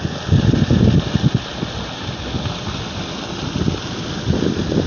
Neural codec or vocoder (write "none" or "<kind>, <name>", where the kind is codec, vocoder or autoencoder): none